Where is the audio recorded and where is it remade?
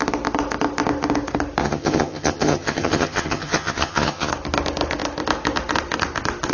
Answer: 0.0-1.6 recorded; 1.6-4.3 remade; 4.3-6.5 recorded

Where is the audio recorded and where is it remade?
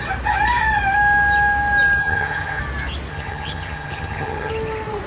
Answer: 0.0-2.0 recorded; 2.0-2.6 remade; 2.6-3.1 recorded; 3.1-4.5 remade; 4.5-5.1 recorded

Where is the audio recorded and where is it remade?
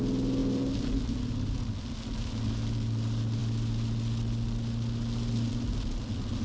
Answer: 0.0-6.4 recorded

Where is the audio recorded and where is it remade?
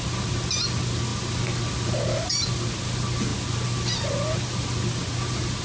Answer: 0.0-5.6 recorded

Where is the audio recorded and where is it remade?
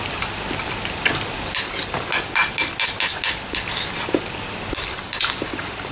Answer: 0.0-5.9 recorded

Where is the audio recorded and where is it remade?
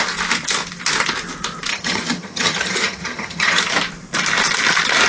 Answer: 0.0-1.7 recorded; 1.7-3.6 remade; 3.6-5.1 recorded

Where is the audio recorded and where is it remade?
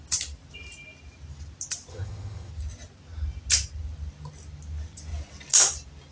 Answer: 0.0-1.9 recorded; 1.9-2.5 remade; 2.5-6.1 recorded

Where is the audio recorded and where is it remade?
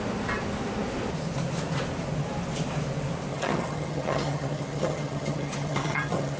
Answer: 0.0-3.3 recorded; 3.3-6.4 remade